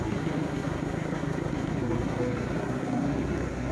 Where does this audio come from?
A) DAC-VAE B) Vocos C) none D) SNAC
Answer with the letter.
D